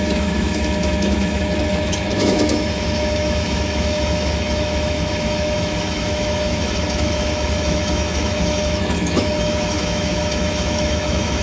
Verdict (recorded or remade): remade